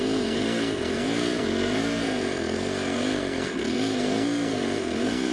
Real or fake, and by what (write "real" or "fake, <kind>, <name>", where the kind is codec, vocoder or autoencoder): fake, codec, SNAC